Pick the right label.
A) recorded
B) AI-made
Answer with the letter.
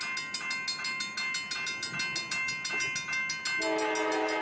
A